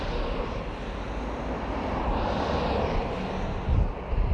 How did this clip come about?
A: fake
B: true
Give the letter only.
B